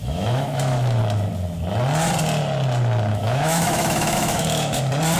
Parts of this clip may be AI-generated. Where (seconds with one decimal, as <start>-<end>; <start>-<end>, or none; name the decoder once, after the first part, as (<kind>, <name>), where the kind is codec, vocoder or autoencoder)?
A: 0.0-1.0 (autoencoder, DAC-VAE); 3.1-4.8